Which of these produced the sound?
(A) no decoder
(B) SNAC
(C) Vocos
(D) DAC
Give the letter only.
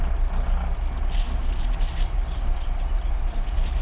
A